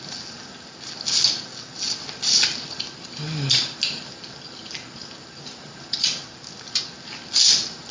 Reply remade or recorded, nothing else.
recorded